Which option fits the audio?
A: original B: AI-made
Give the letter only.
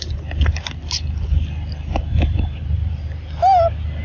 A